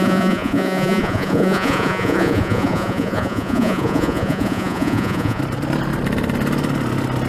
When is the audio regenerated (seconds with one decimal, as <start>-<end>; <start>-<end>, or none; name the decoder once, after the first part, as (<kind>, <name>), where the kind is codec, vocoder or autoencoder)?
0.0-5.4 (vocoder, Vocos)